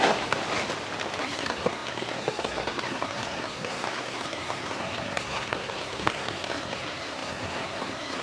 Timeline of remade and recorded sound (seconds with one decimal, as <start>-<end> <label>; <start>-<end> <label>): 0.0-0.4 remade; 0.4-1.2 recorded; 1.2-8.2 remade